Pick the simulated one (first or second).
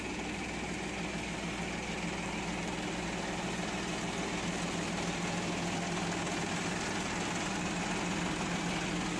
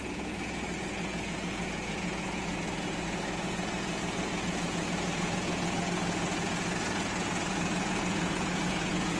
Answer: second